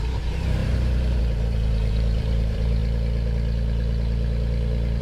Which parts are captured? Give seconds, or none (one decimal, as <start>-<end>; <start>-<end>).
2.8-5.0